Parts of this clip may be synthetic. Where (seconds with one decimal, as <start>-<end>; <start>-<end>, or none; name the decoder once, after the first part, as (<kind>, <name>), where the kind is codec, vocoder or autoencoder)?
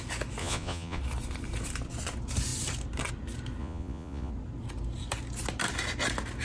0.4-1.0 (vocoder, Vocos); 3.6-4.3